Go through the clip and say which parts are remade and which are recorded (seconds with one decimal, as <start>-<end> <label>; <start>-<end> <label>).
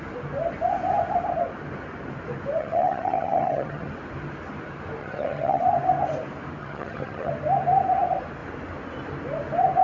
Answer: 0.0-2.6 recorded; 2.6-3.9 remade; 3.9-5.0 recorded; 5.0-5.6 remade; 5.6-6.6 recorded; 6.6-7.3 remade; 7.3-9.8 recorded